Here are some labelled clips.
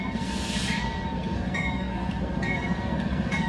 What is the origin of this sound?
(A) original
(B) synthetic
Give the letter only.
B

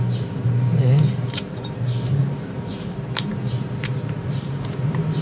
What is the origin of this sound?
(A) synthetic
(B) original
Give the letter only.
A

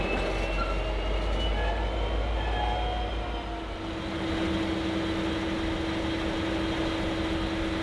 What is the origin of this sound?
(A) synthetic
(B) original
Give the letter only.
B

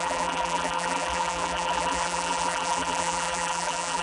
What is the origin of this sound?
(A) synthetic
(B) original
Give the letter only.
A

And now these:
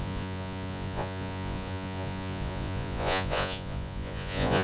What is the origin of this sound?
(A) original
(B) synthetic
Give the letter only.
B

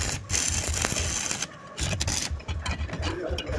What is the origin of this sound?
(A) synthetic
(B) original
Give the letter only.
B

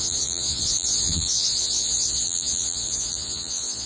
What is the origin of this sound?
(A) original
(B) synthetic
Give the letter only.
B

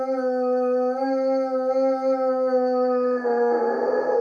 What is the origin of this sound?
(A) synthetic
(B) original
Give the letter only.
B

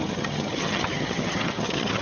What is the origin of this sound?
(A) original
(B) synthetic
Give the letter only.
B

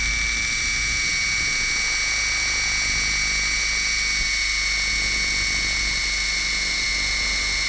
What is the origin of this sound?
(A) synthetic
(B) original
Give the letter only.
B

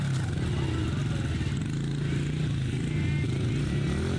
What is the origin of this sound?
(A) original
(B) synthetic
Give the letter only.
A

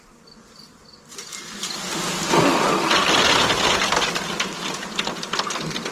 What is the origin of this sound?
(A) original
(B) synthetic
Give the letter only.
A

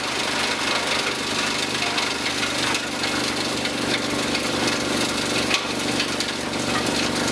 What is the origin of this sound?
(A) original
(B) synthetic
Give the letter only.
A